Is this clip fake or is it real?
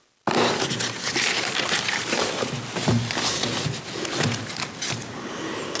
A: real